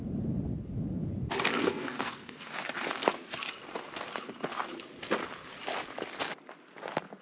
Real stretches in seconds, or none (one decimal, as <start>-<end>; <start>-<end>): 0.0-1.6; 2.5-7.2